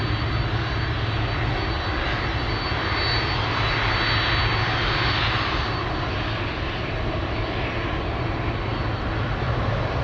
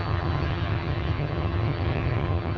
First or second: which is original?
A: first